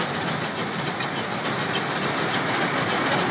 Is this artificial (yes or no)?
no